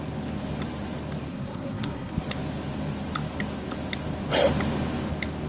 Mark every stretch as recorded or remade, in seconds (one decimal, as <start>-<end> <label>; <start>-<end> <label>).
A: 0.0-1.3 recorded; 1.3-2.1 remade; 2.1-5.5 recorded